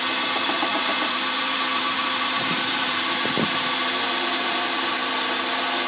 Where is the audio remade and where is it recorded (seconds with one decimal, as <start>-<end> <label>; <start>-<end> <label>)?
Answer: 0.0-5.0 remade; 5.0-5.9 recorded